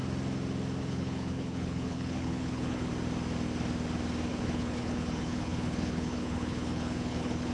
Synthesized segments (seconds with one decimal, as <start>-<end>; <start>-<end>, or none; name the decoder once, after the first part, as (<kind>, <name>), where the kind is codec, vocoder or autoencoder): 0.8-2.9 (codec, HILCodec); 4.3-7.5